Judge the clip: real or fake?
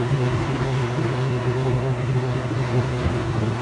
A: fake